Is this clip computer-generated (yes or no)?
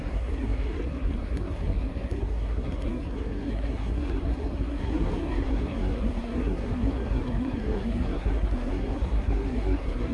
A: yes